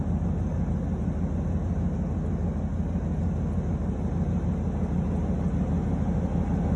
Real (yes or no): yes